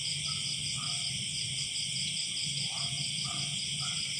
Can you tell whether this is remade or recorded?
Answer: remade